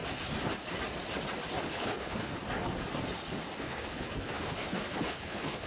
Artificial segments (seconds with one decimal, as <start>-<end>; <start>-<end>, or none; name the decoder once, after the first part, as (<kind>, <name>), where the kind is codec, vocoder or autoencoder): 1.6-2.3 (codec, HILCodec); 3.6-5.7